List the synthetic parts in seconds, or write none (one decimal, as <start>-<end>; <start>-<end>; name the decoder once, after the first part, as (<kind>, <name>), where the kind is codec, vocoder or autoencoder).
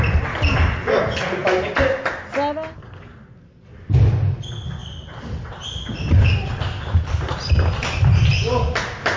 none